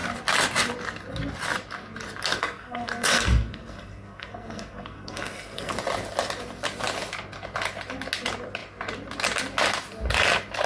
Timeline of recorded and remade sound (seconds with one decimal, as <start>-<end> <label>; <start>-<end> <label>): 0.0-2.4 recorded; 2.4-5.7 remade; 5.7-10.7 recorded